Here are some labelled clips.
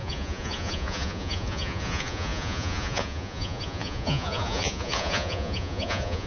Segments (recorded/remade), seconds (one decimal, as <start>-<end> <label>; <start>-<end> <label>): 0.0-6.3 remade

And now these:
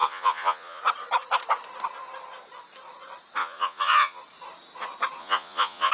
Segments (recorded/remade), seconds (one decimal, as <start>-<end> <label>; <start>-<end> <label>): 0.0-0.8 remade; 0.8-3.4 recorded; 3.4-4.2 remade; 4.2-5.2 recorded; 5.2-5.9 remade

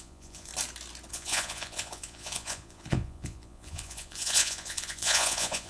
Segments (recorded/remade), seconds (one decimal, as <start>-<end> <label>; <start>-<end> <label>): 0.0-0.5 remade; 0.5-1.1 recorded; 1.1-5.7 remade

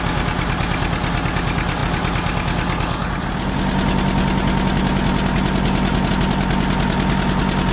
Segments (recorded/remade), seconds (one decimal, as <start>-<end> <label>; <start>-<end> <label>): 0.0-7.7 recorded